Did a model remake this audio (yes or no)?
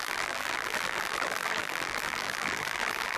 yes